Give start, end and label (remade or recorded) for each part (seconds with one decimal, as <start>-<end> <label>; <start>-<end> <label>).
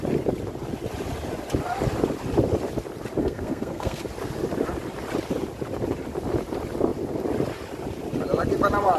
0.0-3.2 recorded; 3.2-4.0 remade; 4.0-9.0 recorded